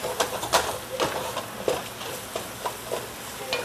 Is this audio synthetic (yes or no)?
no